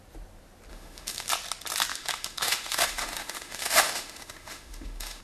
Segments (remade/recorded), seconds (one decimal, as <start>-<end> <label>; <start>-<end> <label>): 0.0-0.7 recorded; 0.7-1.3 remade; 1.3-1.9 recorded; 1.9-5.2 remade